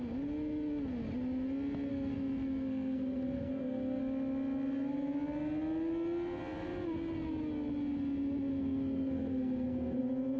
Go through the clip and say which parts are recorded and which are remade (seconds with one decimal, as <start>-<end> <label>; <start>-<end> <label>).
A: 0.0-1.9 recorded; 1.9-4.0 remade; 4.0-8.5 recorded; 8.5-10.0 remade; 10.0-10.4 recorded